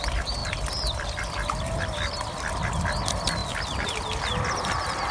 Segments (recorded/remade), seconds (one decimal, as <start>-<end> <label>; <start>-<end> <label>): 0.0-0.4 recorded; 0.4-2.5 remade; 2.5-3.4 recorded; 3.4-4.0 remade; 4.0-5.1 recorded